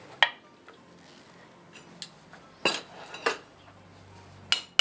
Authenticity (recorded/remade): recorded